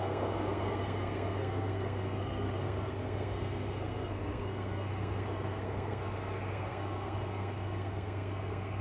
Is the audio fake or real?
fake